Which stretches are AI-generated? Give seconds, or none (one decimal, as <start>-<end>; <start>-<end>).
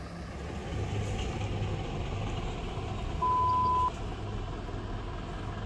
none